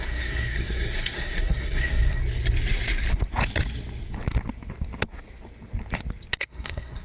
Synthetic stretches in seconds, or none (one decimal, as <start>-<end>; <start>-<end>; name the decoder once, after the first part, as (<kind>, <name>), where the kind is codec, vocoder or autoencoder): 0.0-2.2 (codec, SNAC); 6.4-7.0